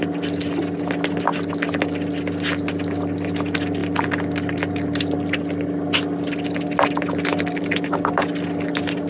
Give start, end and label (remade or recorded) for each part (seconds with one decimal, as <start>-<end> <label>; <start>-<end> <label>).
0.0-9.1 recorded